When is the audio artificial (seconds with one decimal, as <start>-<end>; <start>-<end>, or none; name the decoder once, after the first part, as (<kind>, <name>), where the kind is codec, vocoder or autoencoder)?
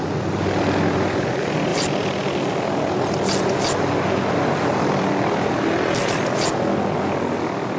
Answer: none